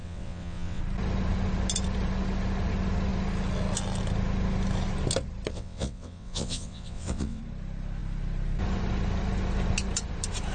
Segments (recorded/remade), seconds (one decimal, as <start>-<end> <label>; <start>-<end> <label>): 0.0-0.8 remade; 0.8-5.5 recorded; 5.5-7.4 remade; 7.4-10.5 recorded